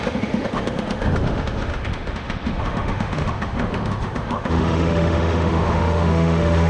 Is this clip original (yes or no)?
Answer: no